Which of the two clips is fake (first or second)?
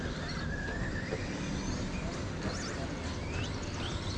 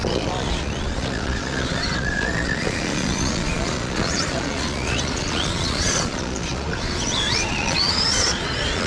second